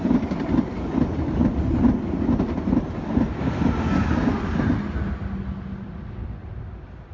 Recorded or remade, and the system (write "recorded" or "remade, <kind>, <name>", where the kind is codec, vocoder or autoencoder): recorded